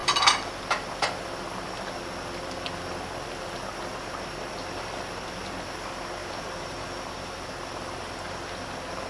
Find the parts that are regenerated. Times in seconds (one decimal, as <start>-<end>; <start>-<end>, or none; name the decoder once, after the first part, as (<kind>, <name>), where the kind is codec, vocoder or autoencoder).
0.0-0.6 (vocoder, BigVGAN v2); 6.2-7.5